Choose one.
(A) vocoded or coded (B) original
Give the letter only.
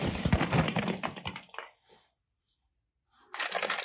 B